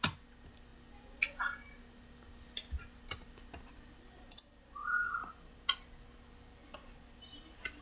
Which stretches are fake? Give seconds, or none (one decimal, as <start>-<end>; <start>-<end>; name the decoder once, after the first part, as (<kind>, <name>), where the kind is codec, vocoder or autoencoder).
none